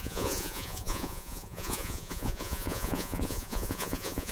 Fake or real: fake